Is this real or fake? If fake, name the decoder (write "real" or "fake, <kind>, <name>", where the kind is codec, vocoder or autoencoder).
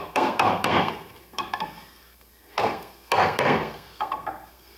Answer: fake, codec, SNAC